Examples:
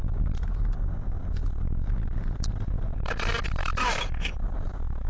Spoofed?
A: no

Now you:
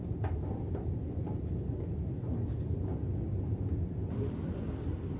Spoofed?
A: no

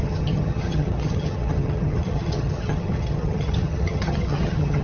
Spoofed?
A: yes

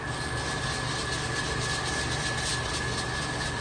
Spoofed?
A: no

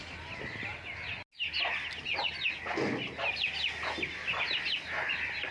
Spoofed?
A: no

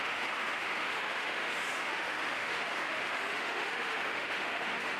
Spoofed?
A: yes